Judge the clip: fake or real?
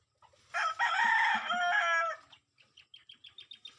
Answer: real